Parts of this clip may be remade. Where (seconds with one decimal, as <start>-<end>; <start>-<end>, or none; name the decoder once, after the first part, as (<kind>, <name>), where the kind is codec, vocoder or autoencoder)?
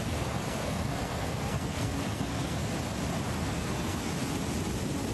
0.0-2.7 (codec, SNAC); 3.4-4.1